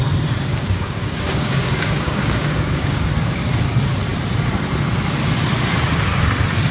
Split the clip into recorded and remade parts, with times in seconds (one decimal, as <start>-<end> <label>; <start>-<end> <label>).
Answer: 0.0-0.5 recorded; 0.5-3.1 remade; 3.1-6.7 recorded